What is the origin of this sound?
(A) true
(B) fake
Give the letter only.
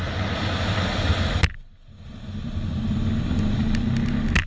A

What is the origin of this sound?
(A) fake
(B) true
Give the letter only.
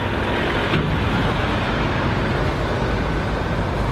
B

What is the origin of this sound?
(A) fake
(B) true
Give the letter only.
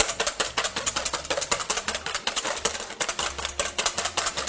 B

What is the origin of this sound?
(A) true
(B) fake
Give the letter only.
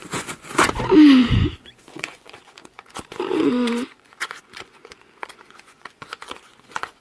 B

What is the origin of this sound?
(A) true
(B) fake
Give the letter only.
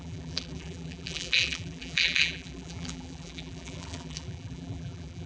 B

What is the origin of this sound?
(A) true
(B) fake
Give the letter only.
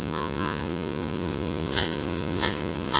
B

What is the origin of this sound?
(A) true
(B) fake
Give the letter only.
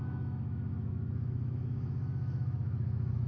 B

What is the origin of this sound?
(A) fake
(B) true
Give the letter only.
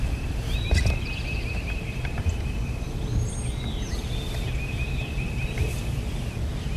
A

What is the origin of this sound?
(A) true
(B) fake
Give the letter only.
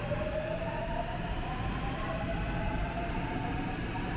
A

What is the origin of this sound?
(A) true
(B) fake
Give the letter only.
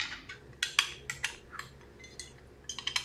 A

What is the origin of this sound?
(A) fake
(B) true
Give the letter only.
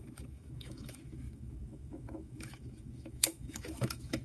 A